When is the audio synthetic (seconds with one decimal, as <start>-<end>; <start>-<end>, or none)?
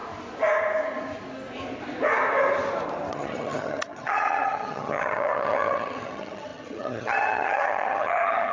3.1-8.5